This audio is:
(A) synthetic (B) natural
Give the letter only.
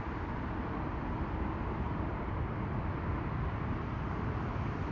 B